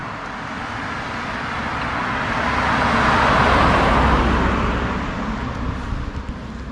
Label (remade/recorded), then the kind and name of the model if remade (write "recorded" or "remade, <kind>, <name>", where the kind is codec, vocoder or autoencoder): recorded